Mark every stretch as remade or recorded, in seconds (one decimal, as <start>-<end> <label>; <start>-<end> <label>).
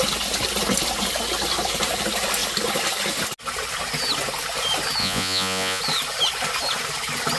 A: 0.0-5.0 recorded; 5.0-5.8 remade; 5.8-7.4 recorded